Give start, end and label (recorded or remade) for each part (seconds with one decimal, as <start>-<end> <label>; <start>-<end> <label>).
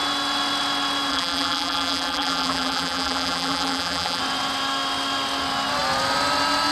0.0-1.1 recorded; 1.1-4.2 remade; 4.2-6.7 recorded